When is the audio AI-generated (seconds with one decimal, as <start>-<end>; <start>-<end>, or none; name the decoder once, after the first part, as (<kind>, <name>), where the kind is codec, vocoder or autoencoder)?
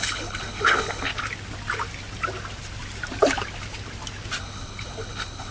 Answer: 0.0-1.1 (codec, HILCodec); 4.4-5.5